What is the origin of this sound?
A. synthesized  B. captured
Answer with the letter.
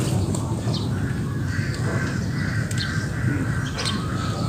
B